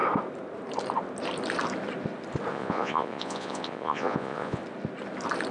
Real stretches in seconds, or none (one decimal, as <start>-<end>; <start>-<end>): 0.0-2.5; 4.6-5.5